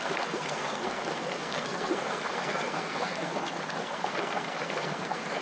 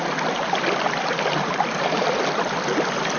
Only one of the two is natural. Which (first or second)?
second